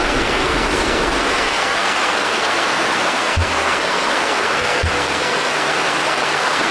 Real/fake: fake